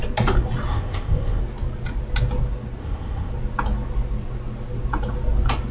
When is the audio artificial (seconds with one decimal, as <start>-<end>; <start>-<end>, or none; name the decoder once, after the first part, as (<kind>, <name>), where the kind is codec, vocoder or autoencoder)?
0.7-1.4 (codec, ZipCodec); 2.8-3.3